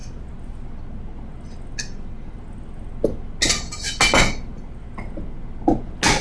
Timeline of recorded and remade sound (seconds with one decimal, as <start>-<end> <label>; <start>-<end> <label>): 0.0-6.2 recorded